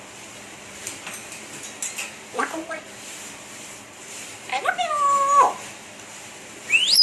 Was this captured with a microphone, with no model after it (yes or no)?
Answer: yes